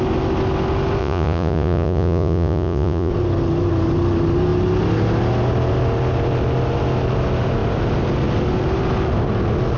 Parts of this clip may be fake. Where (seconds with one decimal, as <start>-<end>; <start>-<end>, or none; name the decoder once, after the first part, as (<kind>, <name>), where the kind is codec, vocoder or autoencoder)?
1.0-3.1 (vocoder, Vocos)